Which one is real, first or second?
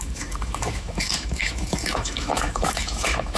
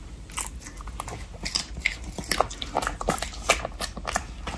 second